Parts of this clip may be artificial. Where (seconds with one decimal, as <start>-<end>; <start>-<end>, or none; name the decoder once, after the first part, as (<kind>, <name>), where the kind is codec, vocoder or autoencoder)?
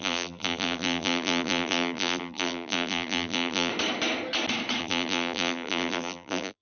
0.0-3.7 (vocoder, BigVGAN v2); 4.8-6.6